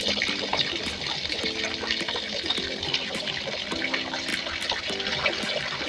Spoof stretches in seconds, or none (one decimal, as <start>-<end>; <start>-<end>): none